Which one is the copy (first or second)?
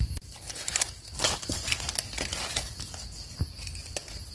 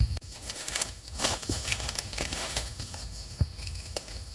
second